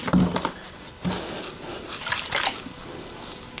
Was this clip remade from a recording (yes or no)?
no